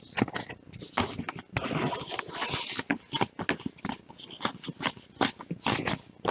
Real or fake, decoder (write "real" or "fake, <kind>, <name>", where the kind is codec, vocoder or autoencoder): real